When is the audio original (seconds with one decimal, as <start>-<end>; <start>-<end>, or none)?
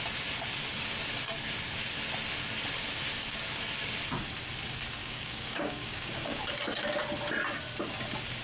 0.0-5.0; 6.4-8.4